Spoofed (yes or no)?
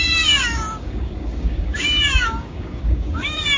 yes